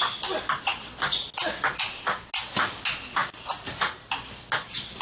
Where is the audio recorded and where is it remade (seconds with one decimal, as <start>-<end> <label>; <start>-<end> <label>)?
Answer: 0.0-3.2 recorded; 3.2-4.1 remade; 4.1-5.0 recorded